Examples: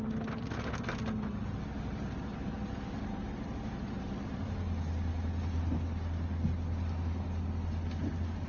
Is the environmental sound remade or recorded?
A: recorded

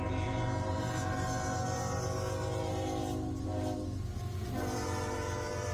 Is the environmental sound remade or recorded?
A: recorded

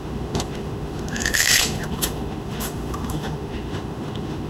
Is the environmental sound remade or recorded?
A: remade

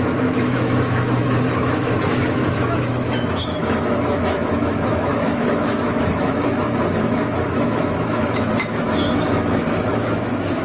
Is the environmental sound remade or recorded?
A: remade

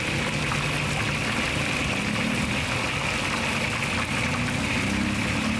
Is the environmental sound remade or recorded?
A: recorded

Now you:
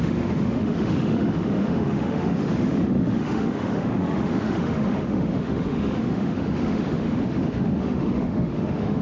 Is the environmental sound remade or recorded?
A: remade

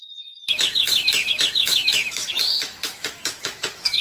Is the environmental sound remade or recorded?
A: remade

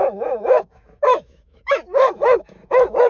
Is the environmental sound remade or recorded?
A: remade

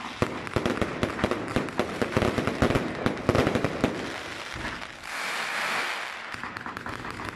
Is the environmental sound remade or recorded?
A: recorded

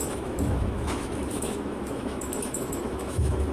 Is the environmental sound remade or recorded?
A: remade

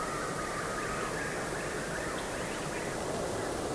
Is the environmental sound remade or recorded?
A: recorded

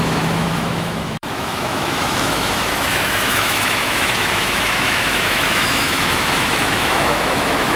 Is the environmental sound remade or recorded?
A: remade